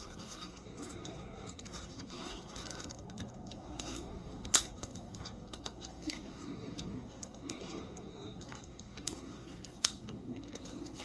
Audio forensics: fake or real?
fake